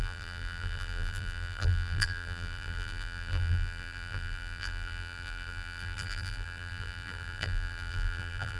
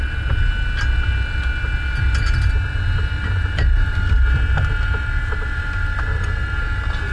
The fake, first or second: first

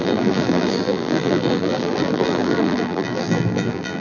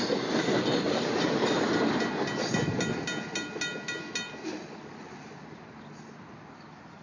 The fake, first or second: first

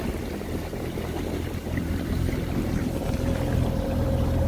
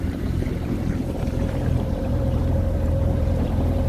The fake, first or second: second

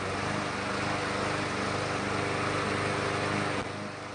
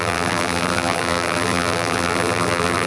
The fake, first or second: second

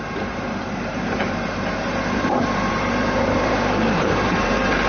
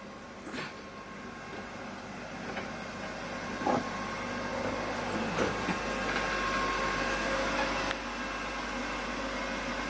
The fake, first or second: first